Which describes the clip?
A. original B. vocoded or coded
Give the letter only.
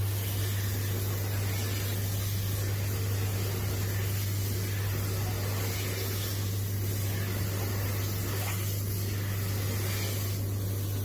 A